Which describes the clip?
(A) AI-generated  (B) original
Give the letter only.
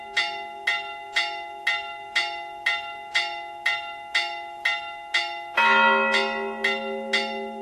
B